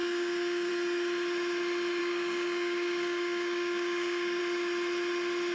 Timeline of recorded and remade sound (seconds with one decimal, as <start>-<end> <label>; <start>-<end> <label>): 0.0-0.7 remade; 0.7-2.0 recorded; 2.0-4.4 remade; 4.4-5.5 recorded